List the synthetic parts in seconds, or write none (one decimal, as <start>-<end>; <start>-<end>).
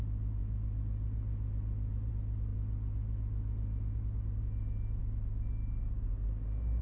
none